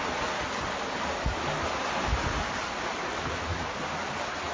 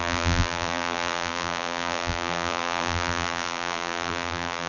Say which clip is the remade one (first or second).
second